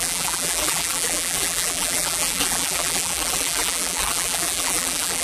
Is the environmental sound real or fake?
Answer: fake